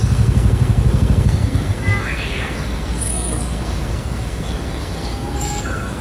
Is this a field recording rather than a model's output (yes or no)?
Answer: no